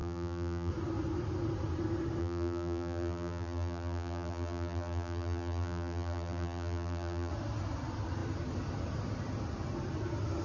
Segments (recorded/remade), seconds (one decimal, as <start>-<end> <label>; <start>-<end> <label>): 0.0-0.7 remade; 0.7-2.2 recorded; 2.2-7.3 remade; 7.3-10.4 recorded